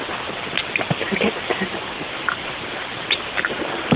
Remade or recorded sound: recorded